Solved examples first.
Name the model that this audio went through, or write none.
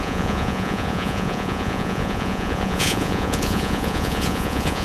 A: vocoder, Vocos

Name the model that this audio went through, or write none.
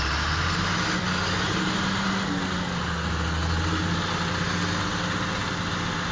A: none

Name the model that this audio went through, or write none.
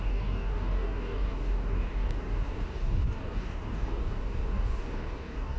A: codec, DAC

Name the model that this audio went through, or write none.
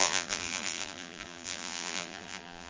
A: vocoder, BigVGAN v2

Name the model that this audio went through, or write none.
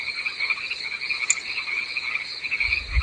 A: none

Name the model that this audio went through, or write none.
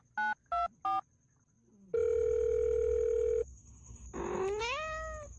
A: none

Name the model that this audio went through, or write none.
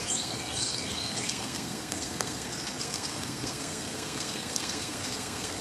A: codec, SNAC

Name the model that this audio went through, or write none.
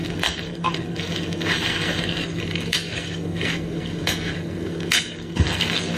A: codec, SNAC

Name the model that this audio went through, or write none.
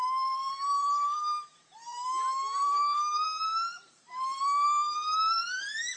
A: vocoder, BigVGAN v2